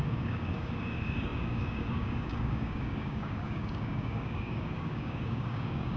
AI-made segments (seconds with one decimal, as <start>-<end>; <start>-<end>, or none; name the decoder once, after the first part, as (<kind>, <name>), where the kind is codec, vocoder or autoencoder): 0.0-6.0 (codec, DAC)